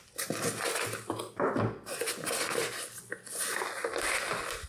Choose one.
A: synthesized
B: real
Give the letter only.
B